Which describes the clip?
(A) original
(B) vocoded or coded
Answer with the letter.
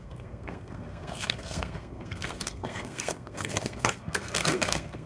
B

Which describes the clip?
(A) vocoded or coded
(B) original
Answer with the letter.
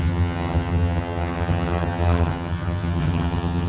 A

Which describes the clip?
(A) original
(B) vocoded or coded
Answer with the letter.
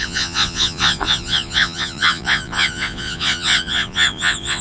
B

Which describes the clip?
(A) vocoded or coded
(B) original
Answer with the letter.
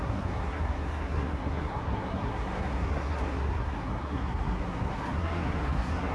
A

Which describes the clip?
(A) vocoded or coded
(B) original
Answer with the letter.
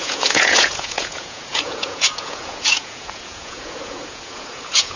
A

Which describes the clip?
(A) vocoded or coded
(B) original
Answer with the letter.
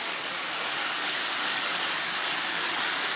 A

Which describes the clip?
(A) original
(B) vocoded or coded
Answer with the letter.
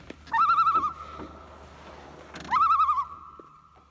A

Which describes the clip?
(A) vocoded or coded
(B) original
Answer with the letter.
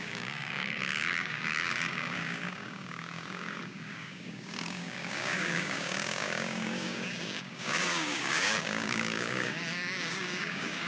A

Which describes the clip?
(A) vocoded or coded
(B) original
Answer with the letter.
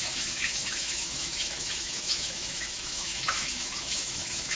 A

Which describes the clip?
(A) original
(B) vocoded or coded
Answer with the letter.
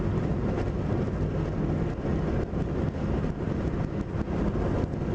A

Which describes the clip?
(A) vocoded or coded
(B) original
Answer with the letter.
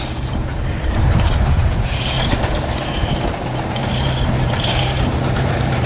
A